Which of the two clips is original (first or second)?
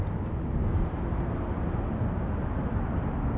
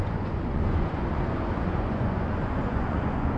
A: first